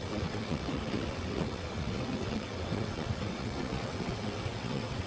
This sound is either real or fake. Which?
fake